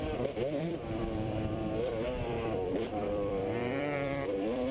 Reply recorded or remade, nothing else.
remade